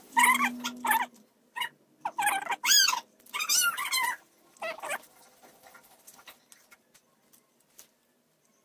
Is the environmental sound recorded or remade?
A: recorded